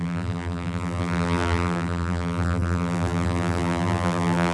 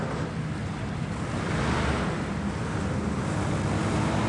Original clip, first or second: second